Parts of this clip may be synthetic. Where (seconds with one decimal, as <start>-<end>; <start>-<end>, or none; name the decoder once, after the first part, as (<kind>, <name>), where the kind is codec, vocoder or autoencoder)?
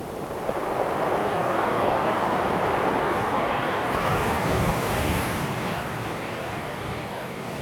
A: 1.2-2.4 (codec, DAC); 3.0-7.6